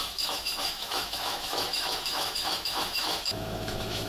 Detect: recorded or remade remade